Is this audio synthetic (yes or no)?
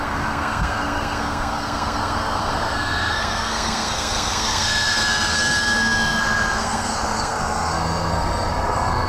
yes